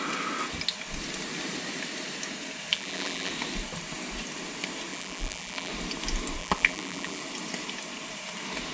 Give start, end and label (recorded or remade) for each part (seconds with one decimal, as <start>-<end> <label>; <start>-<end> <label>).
0.0-2.7 recorded; 2.7-3.3 remade; 3.3-4.9 recorded; 4.9-5.7 remade; 5.7-6.4 recorded; 6.4-7.2 remade; 7.2-8.7 recorded